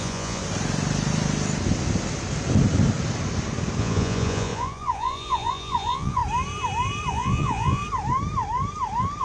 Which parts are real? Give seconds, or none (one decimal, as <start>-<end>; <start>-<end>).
0.4-3.8; 6.2-7.1; 7.8-9.2